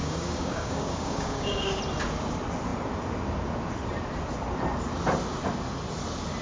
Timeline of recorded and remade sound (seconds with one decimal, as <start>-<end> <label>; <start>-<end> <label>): 0.0-1.8 remade; 1.8-6.4 recorded